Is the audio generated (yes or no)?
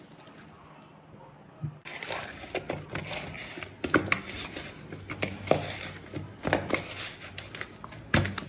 no